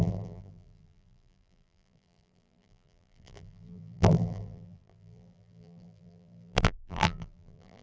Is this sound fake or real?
fake